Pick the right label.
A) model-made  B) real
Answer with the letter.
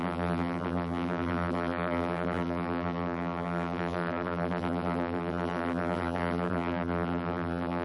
A